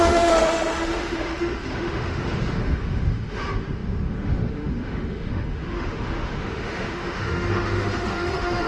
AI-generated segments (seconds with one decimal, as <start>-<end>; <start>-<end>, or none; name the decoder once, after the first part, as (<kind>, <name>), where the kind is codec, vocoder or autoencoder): 0.0-8.7 (autoencoder, DAC-VAE)